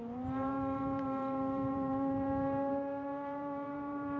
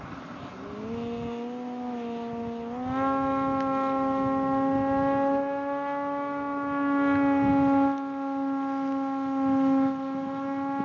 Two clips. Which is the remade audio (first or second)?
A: first